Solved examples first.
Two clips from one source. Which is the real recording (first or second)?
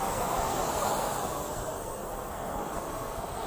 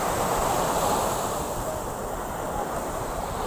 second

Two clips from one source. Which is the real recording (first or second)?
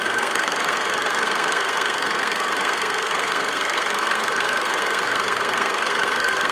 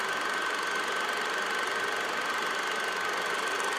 second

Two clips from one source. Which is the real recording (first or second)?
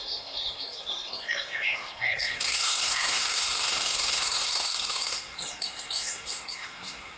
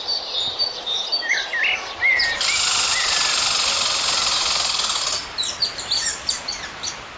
second